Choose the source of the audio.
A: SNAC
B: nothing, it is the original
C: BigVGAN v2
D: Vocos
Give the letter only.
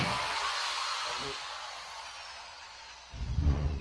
D